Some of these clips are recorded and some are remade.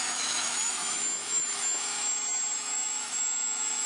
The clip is remade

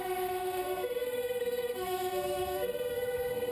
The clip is remade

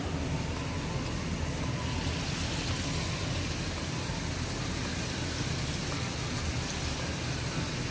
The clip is recorded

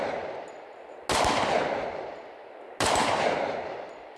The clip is recorded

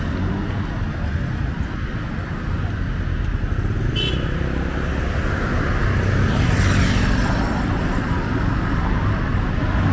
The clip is recorded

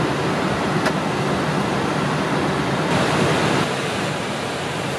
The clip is recorded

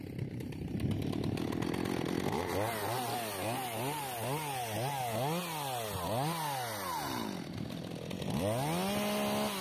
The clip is recorded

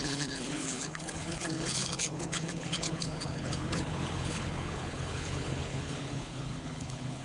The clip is remade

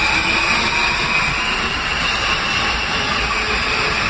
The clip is recorded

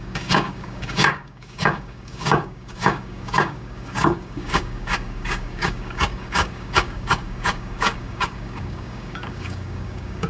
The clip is remade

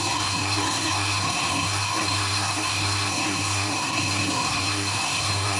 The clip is remade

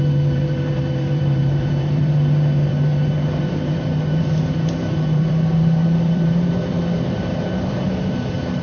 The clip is remade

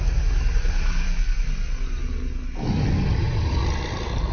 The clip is recorded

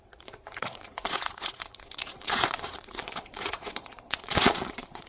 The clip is remade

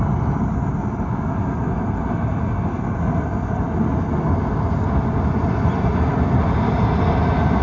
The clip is recorded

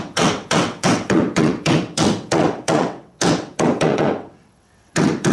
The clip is remade